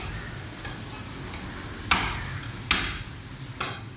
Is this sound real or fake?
real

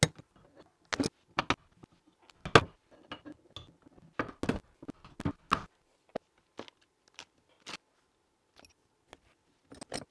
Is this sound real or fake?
real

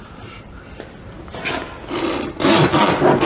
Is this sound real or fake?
real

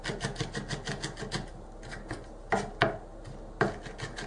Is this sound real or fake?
real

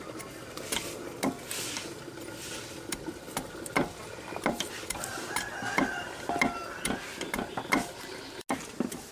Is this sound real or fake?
real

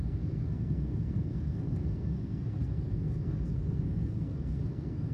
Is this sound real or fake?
fake